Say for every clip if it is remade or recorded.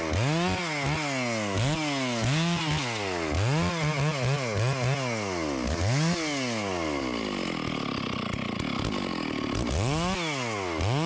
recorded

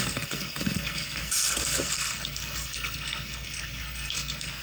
remade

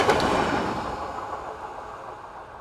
recorded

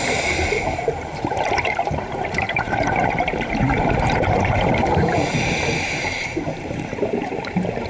remade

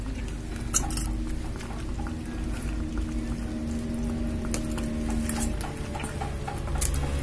recorded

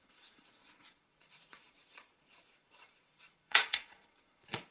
remade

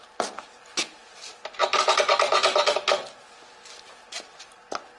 recorded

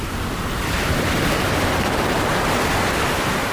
remade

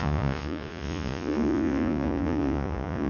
remade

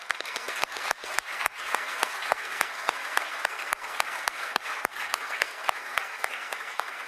remade